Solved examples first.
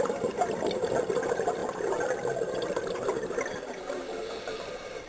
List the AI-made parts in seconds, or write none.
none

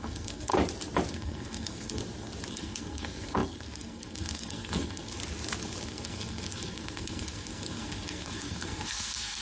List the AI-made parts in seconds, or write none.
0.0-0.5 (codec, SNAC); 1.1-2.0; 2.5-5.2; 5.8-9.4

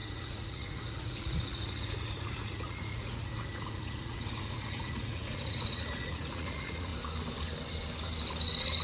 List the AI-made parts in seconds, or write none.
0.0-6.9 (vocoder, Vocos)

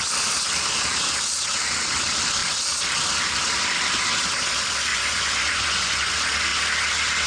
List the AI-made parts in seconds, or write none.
4.9-6.1 (vocoder, Vocos)

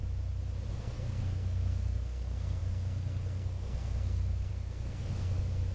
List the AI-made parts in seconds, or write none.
0.7-5.7 (codec, SNAC)

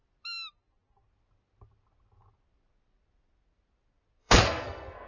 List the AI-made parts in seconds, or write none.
4.2-5.1 (codec, SNAC)